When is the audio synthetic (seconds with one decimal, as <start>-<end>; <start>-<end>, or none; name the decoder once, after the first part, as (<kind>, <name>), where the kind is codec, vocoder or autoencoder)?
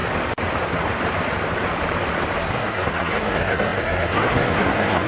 2.4-5.1 (codec, SNAC)